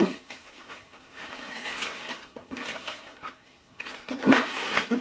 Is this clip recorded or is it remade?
remade